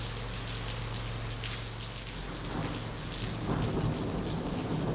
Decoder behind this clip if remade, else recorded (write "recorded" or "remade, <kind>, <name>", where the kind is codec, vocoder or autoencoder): recorded